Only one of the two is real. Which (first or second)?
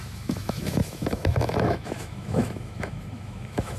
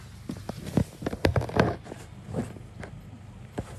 second